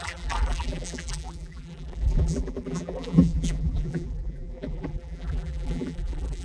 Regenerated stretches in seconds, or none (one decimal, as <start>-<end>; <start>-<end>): 0.0-6.4